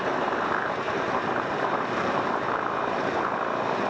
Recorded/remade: remade